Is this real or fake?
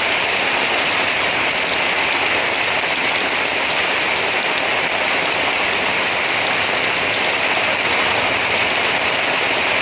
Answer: real